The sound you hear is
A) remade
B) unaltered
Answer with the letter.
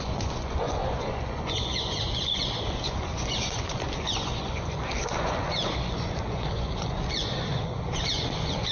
A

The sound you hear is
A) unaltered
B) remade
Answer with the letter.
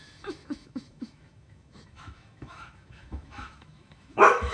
B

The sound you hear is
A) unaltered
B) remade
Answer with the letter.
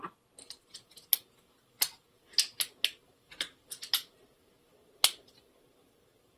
A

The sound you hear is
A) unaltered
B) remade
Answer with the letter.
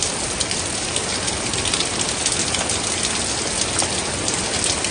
A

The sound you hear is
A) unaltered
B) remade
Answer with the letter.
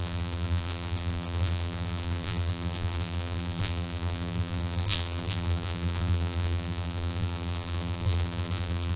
B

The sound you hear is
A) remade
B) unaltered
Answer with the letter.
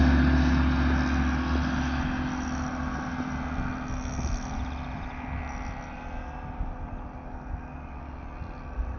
B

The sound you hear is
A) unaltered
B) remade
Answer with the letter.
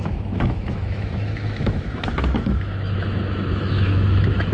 B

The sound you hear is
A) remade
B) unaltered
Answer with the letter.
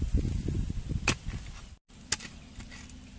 B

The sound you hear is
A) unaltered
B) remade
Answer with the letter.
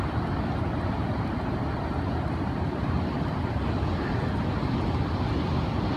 A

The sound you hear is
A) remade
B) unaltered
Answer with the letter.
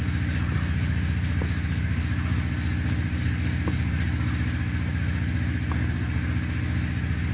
B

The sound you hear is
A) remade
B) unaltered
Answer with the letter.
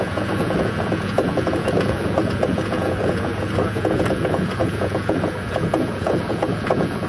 A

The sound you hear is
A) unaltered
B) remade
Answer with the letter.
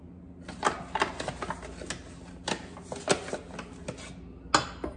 A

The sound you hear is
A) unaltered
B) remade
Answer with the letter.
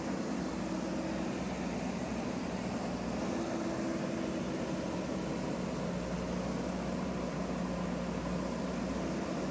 A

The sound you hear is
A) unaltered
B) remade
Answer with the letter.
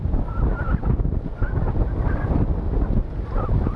A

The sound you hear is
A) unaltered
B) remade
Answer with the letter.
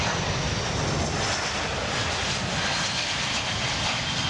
A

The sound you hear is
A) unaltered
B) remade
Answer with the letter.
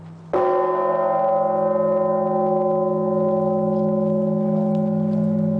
A